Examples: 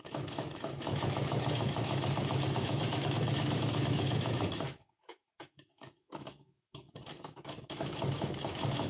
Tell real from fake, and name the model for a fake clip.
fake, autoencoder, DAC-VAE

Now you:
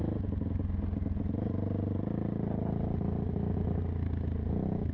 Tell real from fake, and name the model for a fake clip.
real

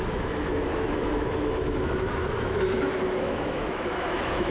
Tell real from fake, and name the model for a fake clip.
fake, autoencoder, DAC-VAE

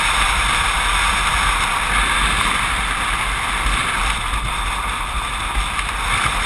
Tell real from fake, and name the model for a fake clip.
real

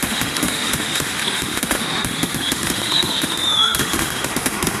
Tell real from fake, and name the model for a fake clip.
fake, autoencoder, DAC-VAE